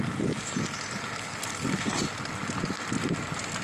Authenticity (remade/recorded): recorded